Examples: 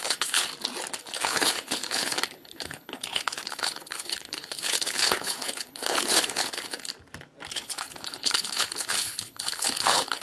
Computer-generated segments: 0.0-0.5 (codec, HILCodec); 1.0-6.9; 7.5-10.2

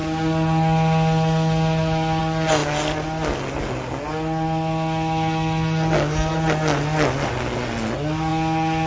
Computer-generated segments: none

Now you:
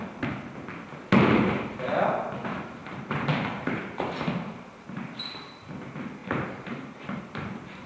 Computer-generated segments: 2.8-4.7 (vocoder, BigVGAN v2); 6.2-7.2

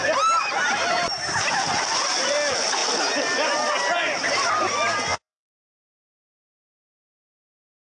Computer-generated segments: 5.1-5.9 (vocoder, Vocos)